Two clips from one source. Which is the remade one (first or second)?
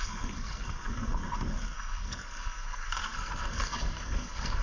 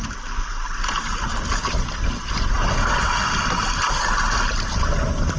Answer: first